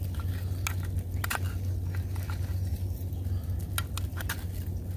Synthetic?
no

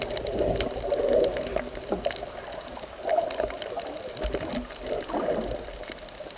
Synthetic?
no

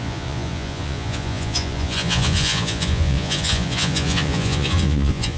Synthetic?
yes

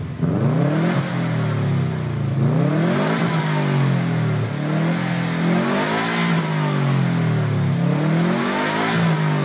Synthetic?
no